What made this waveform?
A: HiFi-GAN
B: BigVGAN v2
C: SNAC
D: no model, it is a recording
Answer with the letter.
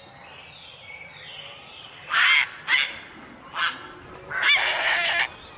D